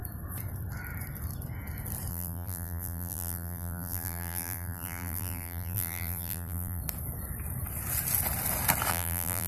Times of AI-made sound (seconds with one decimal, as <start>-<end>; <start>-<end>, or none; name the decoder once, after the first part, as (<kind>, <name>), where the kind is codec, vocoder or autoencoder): 2.1-6.8 (vocoder, BigVGAN v2); 8.9-9.5